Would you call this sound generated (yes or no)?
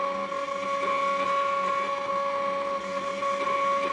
no